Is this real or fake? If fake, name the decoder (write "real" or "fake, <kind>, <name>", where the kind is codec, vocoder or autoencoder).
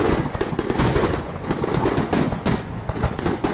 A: fake, vocoder, Vocos